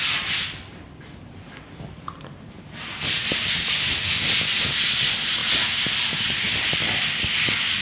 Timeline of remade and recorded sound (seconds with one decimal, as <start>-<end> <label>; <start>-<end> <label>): 0.0-7.8 recorded